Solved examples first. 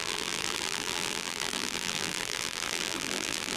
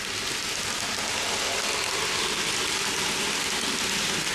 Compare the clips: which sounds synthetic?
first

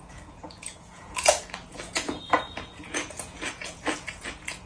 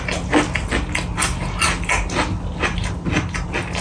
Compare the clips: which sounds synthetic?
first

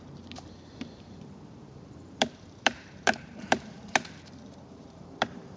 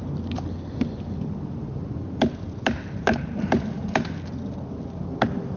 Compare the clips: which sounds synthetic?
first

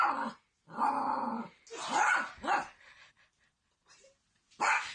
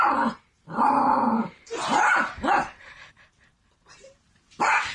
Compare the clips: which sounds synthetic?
second